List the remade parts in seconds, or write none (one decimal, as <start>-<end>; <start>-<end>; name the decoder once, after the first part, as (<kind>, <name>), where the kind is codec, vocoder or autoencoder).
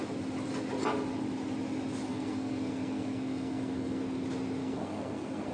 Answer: 2.1-4.0 (codec, SNAC); 4.6-5.5